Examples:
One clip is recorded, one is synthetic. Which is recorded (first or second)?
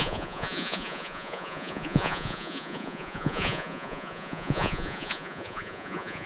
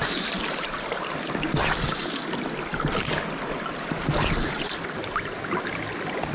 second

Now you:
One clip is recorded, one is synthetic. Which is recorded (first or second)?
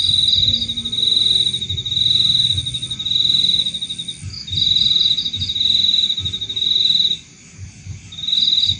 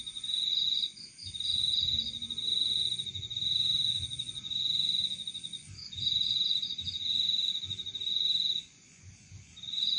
first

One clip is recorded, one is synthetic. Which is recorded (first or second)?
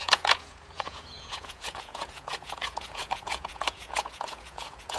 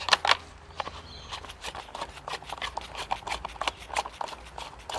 second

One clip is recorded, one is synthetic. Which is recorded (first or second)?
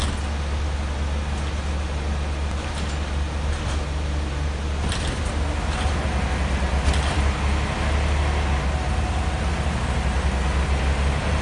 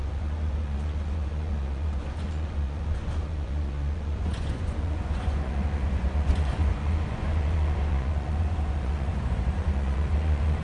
first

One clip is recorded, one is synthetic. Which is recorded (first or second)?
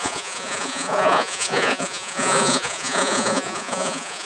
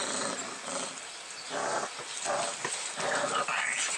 second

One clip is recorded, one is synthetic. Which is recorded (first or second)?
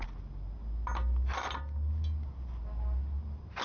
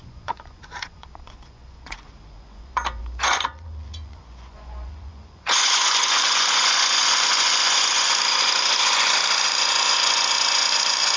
first